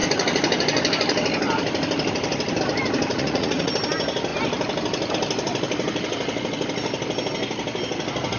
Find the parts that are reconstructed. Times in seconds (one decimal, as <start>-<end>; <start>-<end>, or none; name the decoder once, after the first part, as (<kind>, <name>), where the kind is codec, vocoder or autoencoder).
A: 3.1-3.7 (vocoder, Vocos)